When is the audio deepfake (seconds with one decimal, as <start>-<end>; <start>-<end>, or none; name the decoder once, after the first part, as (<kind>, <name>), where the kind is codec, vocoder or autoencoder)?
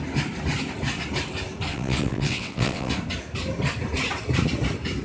1.7-2.9 (vocoder, WaveNeXt)